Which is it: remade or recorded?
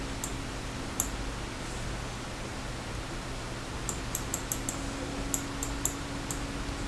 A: recorded